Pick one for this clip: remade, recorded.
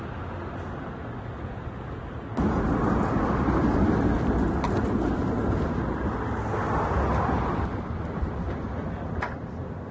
recorded